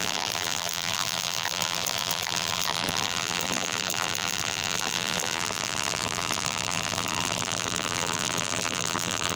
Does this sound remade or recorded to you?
remade